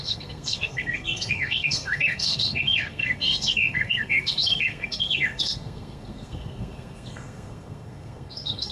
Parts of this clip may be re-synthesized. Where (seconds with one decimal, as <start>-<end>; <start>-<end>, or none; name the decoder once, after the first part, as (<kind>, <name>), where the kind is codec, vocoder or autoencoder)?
0.0-8.7 (codec, SNAC)